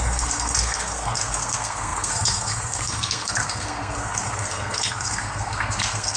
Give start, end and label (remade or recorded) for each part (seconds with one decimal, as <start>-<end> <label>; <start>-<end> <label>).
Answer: 0.0-6.2 remade